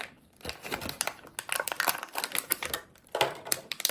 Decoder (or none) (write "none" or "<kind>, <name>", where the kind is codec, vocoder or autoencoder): vocoder, BigVGAN v2